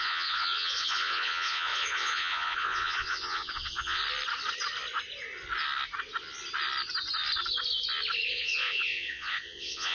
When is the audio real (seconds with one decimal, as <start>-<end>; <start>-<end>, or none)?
4.0-8.3